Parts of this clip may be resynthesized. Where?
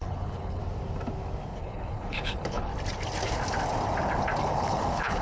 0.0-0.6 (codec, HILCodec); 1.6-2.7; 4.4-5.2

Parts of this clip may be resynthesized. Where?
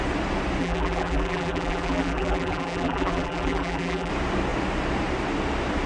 0.6-4.1 (vocoder, BigVGAN v2)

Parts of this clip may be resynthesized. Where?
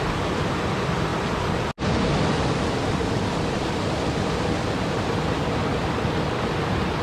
none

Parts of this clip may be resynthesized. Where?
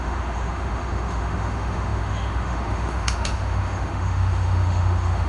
0.0-5.3 (autoencoder, DAC-VAE)